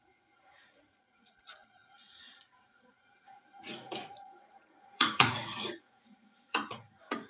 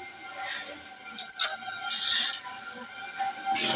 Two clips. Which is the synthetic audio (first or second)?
first